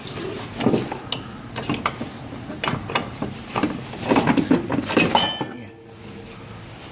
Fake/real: real